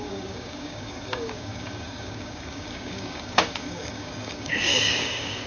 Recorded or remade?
remade